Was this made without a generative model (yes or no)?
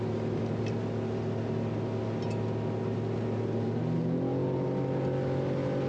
yes